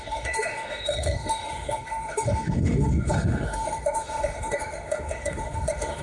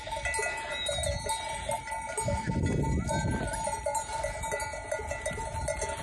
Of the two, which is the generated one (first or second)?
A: first